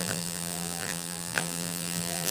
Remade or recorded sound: remade